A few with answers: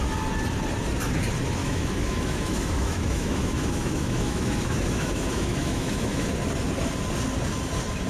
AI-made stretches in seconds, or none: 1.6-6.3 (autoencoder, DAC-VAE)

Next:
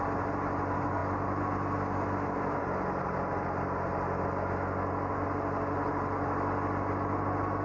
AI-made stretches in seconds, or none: none

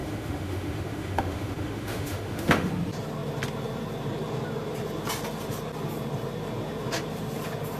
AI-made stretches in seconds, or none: 0.0-2.7 (autoencoder, DAC-VAE)

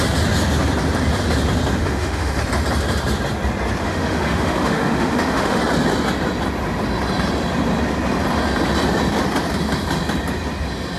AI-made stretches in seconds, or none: 1.8-2.4 (autoencoder, DAC-VAE); 3.8-5.6

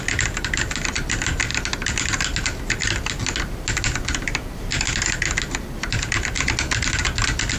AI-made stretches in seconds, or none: none

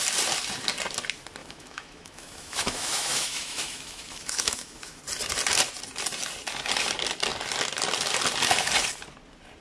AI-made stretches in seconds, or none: 1.4-5.0 (autoencoder, DAC-VAE)